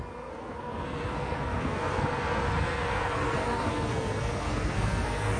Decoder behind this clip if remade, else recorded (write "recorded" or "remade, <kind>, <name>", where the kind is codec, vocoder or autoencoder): remade, codec, SNAC